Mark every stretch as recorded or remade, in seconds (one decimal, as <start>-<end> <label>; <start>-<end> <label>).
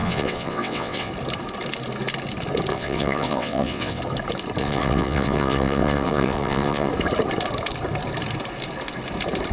0.0-1.1 remade; 1.1-2.7 recorded; 2.7-4.0 remade; 4.0-4.6 recorded; 4.6-6.9 remade; 6.9-9.5 recorded